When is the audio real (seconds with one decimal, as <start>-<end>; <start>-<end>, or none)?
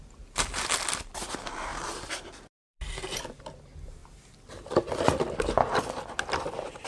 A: 0.0-1.7; 3.4-6.9